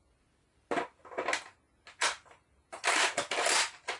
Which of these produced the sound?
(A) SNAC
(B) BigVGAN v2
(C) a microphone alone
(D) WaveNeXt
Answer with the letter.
C